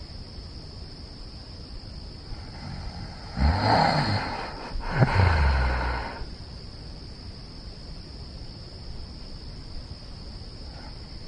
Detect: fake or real real